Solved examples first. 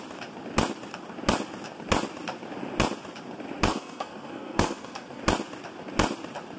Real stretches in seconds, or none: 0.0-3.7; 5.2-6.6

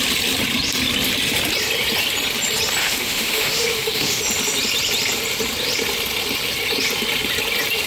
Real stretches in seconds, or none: 0.0-2.8; 4.2-7.9

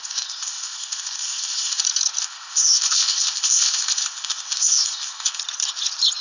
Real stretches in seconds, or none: 1.8-2.2; 5.4-6.2

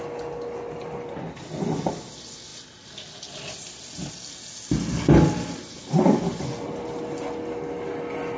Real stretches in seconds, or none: 0.0-8.4

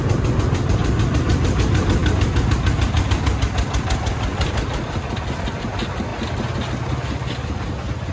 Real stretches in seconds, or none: 0.0-4.3; 5.6-8.1

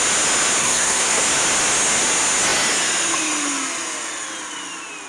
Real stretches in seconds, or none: 0.0-0.6; 1.2-5.1

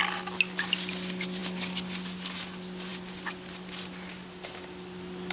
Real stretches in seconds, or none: 0.0-5.3

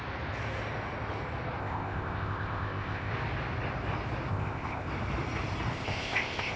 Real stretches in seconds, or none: 0.0-1.6; 3.1-4.3; 4.9-5.7